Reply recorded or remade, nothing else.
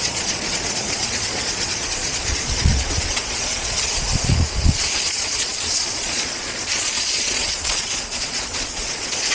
remade